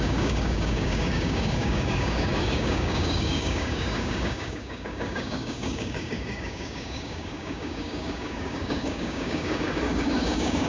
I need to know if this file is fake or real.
fake